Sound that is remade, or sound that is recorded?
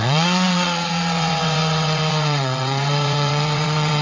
remade